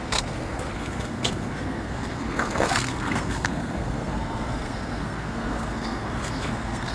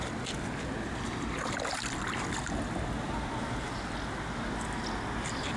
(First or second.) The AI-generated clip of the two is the first